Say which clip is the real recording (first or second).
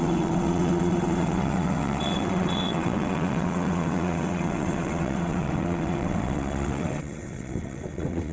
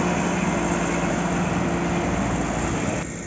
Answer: second